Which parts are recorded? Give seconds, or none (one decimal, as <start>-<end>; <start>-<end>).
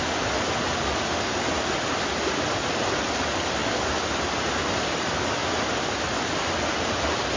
0.0-7.4